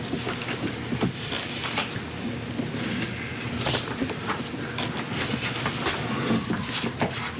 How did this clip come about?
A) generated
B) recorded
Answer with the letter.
B